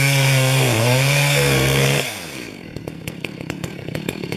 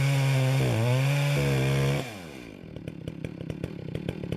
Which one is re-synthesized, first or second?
first